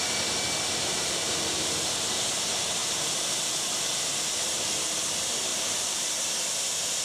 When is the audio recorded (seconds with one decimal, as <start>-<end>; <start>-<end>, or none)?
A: 0.0-7.0